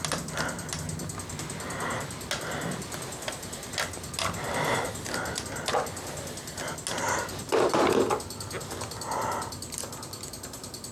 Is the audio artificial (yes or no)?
no